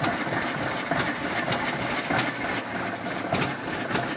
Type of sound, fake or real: real